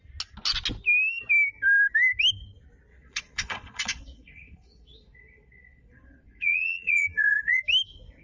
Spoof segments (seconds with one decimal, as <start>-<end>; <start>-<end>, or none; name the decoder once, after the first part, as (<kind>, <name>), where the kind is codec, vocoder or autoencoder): 2.9-7.6 (vocoder, Vocos)